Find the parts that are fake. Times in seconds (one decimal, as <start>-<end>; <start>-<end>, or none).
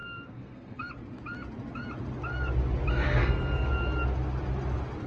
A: 0.0-0.9; 2.9-3.7